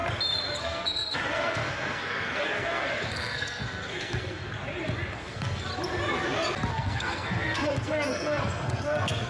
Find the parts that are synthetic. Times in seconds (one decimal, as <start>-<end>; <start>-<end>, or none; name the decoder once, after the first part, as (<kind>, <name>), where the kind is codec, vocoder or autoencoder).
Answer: 0.6-4.5 (codec, SNAC); 5.1-5.7; 6.7-9.3

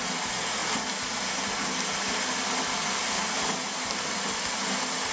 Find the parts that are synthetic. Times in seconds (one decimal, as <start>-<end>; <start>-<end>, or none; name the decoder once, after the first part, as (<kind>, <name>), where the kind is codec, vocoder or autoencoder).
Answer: none

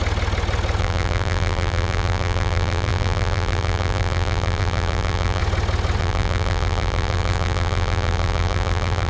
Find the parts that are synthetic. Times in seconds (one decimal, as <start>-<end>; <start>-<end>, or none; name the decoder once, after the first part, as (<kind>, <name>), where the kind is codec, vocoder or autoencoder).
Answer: 0.8-5.4 (vocoder, BigVGAN v2); 6.0-9.1

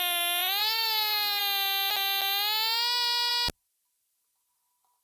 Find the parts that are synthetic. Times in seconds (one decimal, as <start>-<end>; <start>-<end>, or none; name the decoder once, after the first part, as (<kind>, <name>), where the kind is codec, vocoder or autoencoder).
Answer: 0.6-1.4 (codec, SNAC)

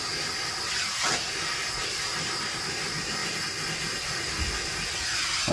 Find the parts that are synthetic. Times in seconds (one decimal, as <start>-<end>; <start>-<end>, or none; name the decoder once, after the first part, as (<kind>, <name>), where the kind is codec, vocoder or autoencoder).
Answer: none

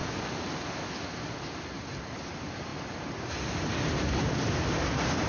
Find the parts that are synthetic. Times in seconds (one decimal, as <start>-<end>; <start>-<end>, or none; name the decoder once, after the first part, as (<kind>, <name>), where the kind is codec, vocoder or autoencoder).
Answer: 2.3-2.7 (vocoder, BigVGAN v2); 4.2-5.3

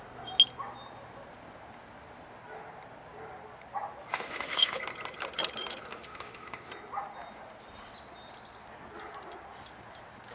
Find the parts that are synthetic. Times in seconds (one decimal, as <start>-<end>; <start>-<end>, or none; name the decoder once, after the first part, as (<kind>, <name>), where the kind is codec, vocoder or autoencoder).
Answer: 4.1-4.8 (autoencoder, DAC-VAE); 5.9-6.7